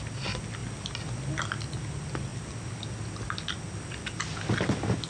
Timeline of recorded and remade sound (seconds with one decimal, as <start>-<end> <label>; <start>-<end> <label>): 0.0-5.1 recorded